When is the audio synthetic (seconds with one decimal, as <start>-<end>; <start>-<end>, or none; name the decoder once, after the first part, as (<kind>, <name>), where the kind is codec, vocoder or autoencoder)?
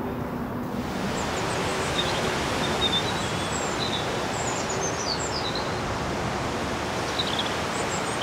1.7-2.3 (autoencoder, DAC-VAE)